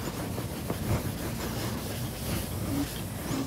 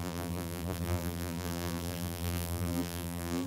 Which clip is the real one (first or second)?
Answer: first